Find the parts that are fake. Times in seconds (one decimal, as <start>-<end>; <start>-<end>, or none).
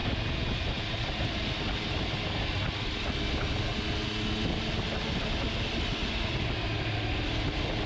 none